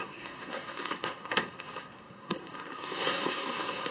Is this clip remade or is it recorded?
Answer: remade